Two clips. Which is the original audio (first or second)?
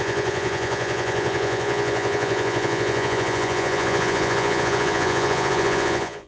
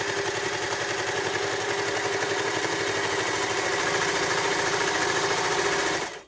second